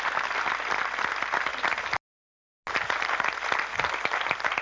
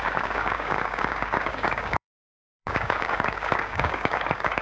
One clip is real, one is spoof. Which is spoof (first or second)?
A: second